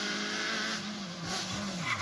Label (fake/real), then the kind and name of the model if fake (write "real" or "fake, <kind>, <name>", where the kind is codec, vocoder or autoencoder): real